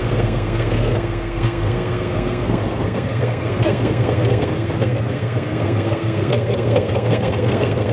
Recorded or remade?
remade